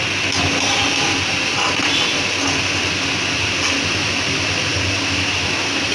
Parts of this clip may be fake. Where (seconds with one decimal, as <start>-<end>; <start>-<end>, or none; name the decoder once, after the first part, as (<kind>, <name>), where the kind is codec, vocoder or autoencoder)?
none